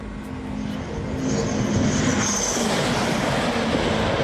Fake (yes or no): no